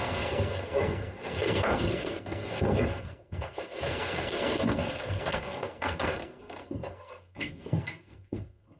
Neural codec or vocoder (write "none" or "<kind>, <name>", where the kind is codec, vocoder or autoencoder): codec, SNAC